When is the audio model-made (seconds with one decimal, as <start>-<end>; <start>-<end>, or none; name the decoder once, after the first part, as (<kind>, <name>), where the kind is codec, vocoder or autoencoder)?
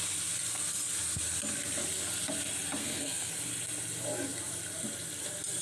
2.8-3.3 (codec, SNAC)